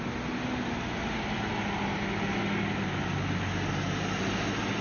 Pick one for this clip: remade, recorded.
recorded